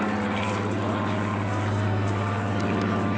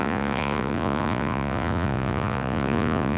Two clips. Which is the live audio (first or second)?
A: first